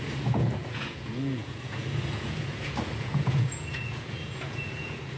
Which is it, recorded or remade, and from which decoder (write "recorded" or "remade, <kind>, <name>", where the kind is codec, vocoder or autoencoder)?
remade, vocoder, Vocos